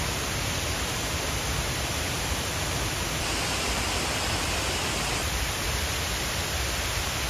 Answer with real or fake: real